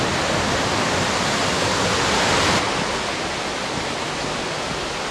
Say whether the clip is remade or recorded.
recorded